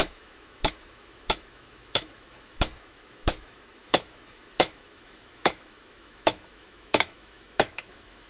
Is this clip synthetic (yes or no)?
yes